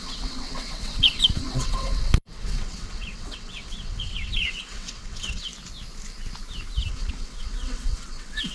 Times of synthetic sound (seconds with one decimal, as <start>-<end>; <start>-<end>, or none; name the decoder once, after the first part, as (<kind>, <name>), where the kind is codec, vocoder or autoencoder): 0.0-5.5 (vocoder, WaveNeXt); 6.9-8.5